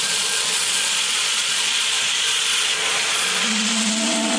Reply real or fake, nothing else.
fake